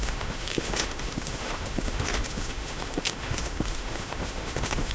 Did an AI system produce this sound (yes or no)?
yes